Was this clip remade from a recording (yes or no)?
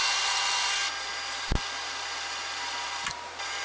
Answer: no